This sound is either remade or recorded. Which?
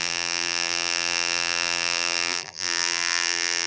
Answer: remade